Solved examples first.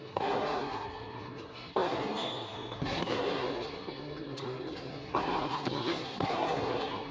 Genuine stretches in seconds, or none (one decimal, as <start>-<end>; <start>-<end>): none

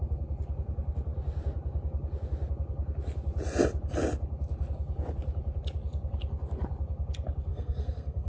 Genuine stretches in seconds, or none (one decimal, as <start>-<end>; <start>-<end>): 0.0-7.5

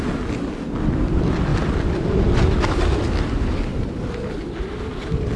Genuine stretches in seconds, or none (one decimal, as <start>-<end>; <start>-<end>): 0.0-5.4

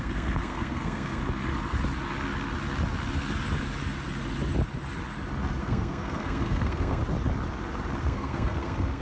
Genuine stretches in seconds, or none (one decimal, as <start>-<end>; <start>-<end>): 1.2-5.6; 7.0-8.0

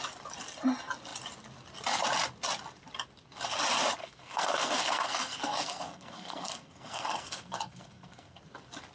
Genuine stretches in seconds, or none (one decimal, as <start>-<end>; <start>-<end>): 0.0-4.0; 8.4-8.9

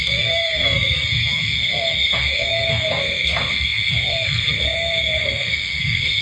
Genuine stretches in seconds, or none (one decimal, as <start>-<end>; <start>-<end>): none

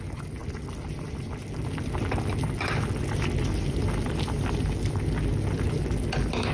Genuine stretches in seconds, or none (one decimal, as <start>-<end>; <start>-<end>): 0.0-6.5

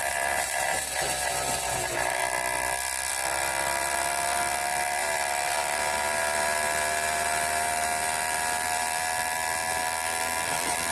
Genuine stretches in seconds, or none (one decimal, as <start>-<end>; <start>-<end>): 0.0-10.9